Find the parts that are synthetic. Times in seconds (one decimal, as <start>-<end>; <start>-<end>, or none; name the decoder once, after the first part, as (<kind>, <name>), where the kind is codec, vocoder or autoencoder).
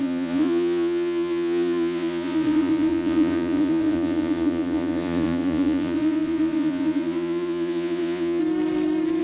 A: 0.0-8.4 (vocoder, Vocos)